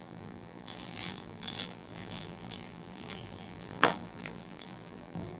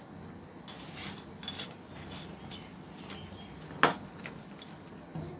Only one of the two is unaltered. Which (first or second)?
second